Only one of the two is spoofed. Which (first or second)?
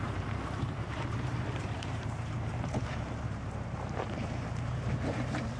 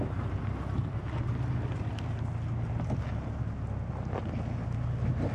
first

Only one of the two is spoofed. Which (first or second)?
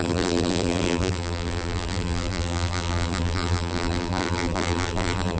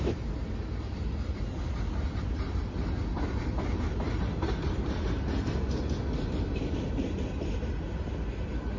first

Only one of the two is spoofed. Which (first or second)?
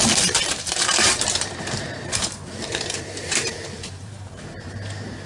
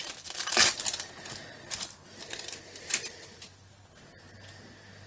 first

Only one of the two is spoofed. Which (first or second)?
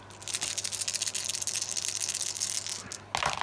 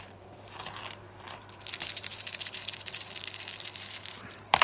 second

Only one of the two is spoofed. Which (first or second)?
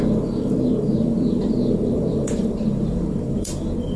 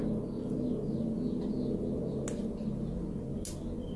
first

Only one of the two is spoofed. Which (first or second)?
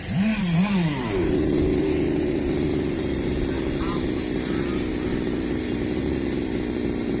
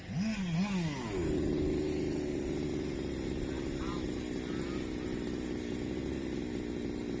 first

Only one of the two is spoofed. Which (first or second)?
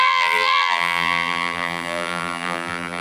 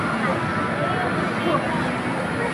first